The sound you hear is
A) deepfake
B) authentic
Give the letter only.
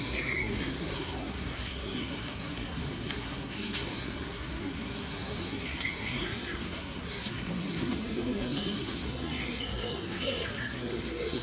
A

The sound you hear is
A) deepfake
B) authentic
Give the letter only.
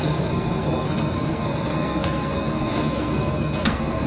A